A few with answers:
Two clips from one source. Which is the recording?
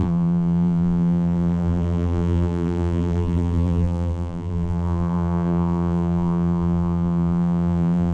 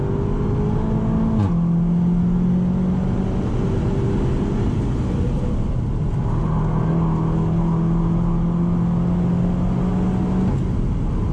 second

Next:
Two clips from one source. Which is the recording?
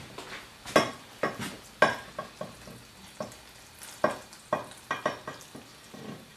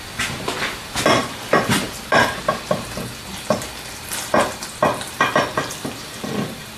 first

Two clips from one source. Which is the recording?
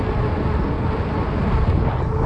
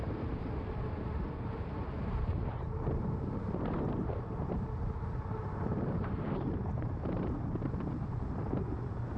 first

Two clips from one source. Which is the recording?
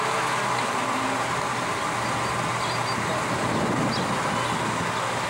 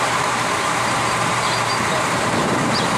first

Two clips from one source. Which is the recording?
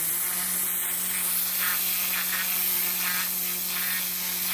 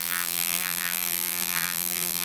first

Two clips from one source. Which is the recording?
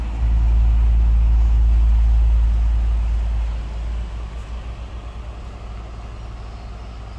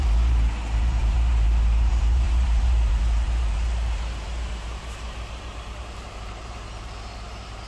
first